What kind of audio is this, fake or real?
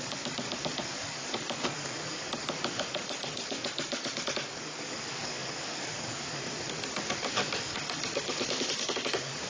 fake